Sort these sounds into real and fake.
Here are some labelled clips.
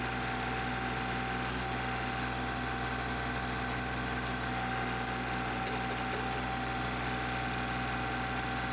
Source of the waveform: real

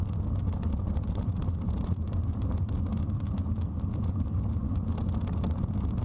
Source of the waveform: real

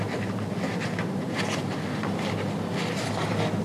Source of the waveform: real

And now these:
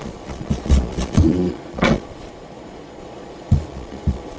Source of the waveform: fake